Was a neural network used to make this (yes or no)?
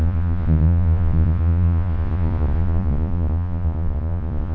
yes